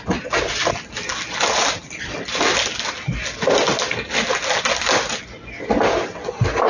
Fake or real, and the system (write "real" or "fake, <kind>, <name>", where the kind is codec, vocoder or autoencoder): real